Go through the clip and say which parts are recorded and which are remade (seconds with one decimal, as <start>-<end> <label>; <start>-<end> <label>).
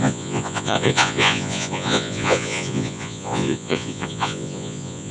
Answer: 0.0-5.1 remade